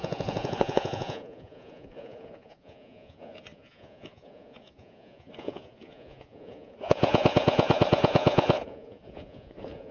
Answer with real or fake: fake